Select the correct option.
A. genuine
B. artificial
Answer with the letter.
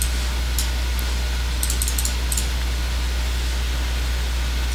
A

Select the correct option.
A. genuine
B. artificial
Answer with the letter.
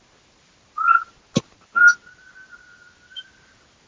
A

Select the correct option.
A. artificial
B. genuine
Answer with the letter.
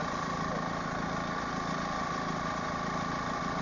B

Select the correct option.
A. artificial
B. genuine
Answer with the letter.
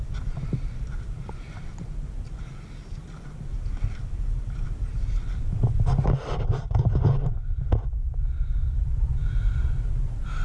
B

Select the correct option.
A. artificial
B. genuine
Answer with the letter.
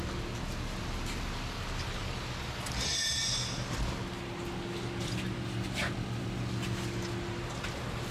B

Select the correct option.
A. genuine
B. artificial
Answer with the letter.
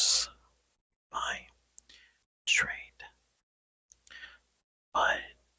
A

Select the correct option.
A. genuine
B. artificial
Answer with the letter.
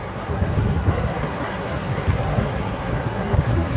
B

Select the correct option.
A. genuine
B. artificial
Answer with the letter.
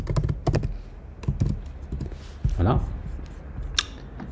A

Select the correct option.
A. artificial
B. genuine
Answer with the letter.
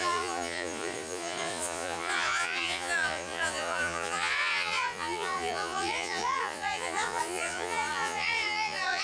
A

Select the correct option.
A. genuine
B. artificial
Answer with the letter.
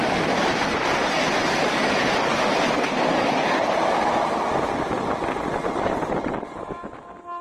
A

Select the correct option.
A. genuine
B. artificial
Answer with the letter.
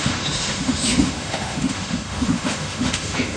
B